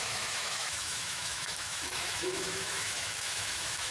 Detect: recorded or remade remade